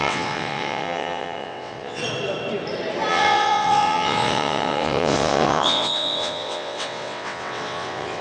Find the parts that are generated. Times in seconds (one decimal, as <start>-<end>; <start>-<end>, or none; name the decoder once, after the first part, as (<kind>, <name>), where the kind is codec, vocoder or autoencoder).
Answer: 0.0-2.0 (vocoder, WaveNeXt); 3.1-8.2